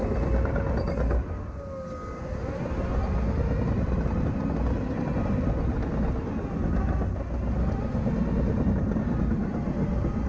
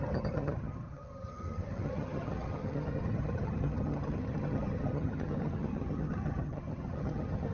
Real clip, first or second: first